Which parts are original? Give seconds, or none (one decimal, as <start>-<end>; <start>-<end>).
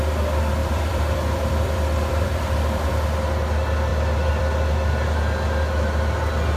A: 0.0-0.6; 2.9-6.6